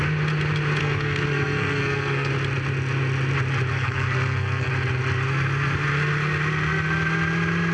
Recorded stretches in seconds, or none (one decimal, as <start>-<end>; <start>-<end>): 0.0-0.8; 2.3-3.7; 4.7-7.7